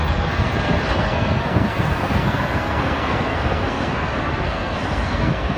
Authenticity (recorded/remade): remade